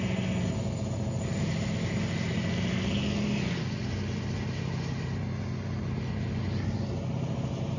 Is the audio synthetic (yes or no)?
no